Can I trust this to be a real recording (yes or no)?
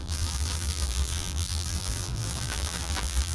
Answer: no